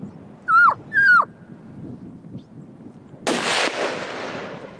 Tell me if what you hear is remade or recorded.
recorded